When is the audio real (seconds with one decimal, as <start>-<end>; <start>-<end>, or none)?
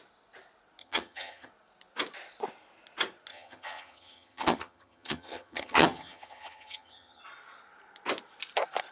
0.0-0.8; 1.5-3.3; 7.2-8.9